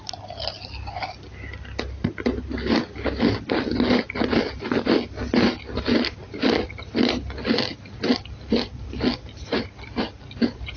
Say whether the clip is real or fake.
real